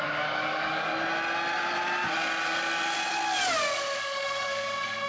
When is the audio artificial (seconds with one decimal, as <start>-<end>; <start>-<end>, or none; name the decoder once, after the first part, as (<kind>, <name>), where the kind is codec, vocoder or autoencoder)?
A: 0.0-0.9 (codec, DAC); 4.0-5.1